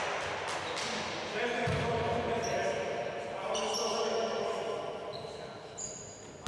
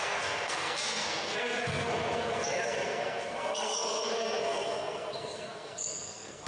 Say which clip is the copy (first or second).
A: second